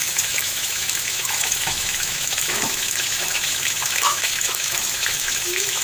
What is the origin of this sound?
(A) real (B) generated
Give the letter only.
B